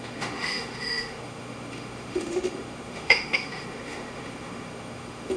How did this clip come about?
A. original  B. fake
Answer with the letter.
B